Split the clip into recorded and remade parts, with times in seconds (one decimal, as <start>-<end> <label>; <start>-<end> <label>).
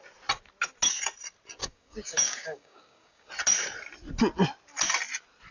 0.0-1.6 recorded; 1.6-3.3 remade; 3.3-5.5 recorded